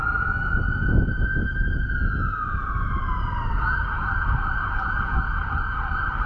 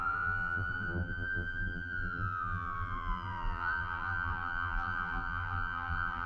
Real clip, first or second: first